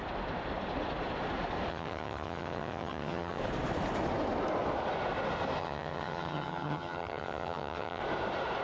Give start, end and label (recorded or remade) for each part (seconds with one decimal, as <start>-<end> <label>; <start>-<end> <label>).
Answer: 0.0-1.7 recorded; 1.7-3.4 remade; 3.4-5.6 recorded; 5.6-8.0 remade; 8.0-8.6 recorded